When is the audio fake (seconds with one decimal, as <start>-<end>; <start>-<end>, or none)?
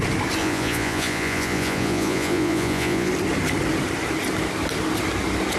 0.4-3.1